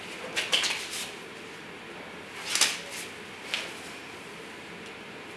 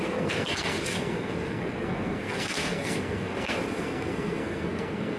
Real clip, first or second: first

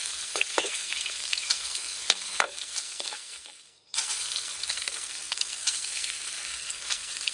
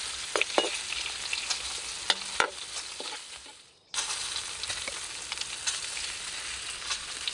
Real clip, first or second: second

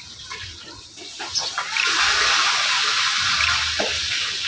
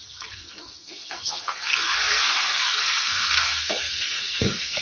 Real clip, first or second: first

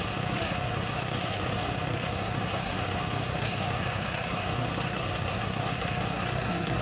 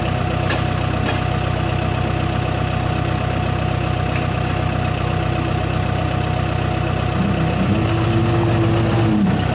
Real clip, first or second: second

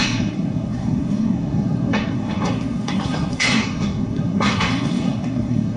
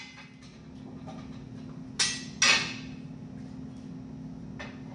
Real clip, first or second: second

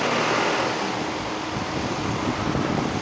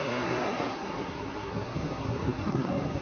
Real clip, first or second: first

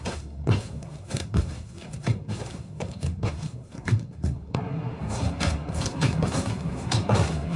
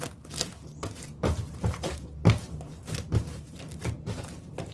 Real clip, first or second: second